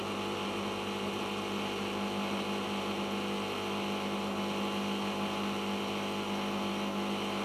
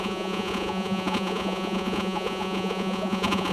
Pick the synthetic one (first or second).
second